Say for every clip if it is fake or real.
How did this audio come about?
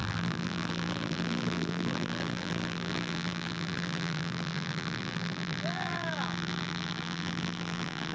fake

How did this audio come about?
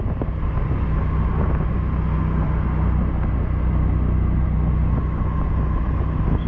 real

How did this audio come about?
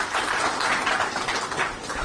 real